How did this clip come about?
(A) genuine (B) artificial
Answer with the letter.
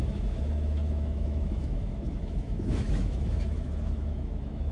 B